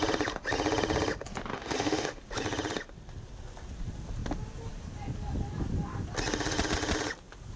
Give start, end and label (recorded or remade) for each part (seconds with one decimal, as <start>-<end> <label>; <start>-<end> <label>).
0.0-1.5 recorded; 1.5-2.2 remade; 2.2-7.6 recorded